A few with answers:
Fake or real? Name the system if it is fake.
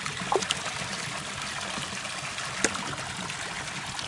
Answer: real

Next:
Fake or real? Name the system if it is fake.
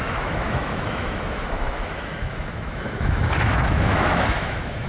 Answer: fake, autoencoder, DAC-VAE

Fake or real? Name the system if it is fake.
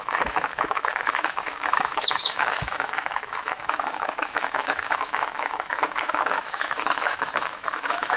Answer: fake, autoencoder, DAC-VAE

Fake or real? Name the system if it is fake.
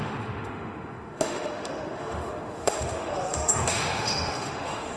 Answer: fake, autoencoder, DAC-VAE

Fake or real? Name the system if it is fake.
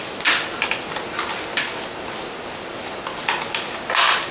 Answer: real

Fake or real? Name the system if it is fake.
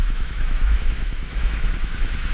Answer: fake, autoencoder, DAC-VAE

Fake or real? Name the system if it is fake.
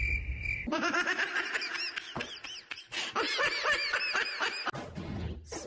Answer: real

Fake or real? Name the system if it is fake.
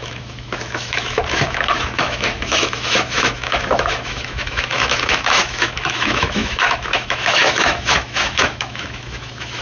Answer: fake, autoencoder, DAC-VAE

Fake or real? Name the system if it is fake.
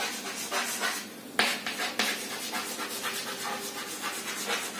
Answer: real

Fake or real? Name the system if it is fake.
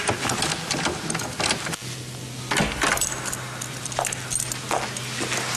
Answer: real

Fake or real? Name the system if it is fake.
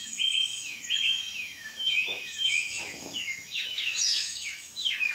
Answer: fake, autoencoder, DAC-VAE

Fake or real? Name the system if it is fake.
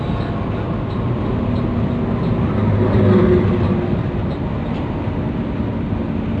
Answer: real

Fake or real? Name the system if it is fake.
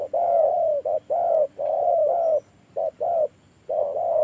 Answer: real